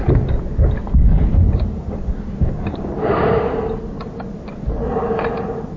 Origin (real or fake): real